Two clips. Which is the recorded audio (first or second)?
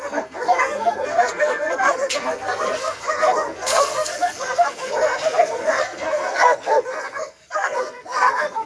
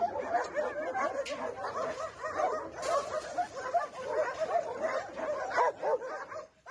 second